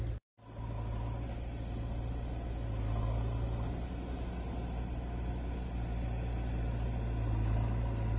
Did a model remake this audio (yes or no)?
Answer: no